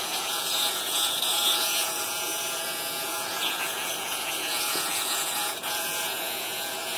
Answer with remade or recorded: remade